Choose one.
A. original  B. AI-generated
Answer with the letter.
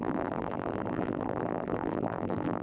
B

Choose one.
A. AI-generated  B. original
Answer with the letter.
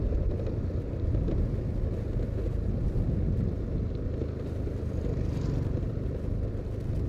B